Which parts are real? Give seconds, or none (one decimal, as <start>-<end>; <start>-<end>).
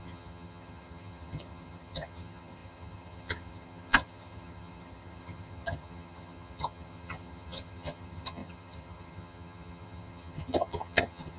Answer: none